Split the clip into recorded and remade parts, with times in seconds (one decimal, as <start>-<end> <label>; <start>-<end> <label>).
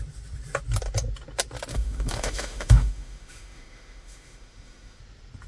0.0-1.7 recorded; 1.7-5.0 remade; 5.0-5.5 recorded